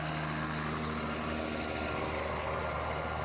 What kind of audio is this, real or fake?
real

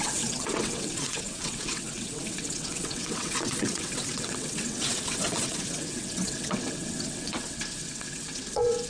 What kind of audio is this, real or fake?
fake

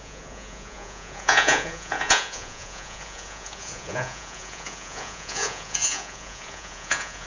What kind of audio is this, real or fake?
fake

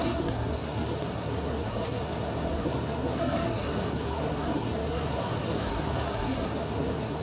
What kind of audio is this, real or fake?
fake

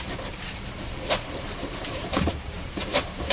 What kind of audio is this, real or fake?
fake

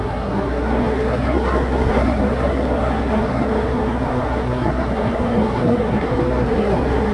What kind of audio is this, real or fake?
fake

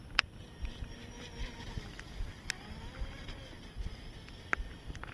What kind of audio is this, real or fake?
real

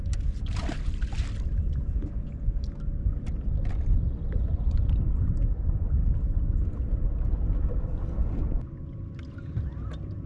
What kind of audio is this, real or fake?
real